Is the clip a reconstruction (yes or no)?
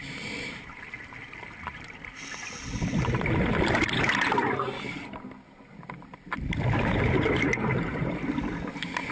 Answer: no